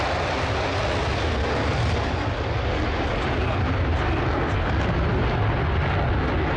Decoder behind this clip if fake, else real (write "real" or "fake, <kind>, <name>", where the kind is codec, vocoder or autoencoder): real